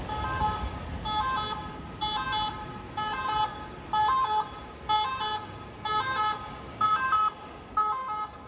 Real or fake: real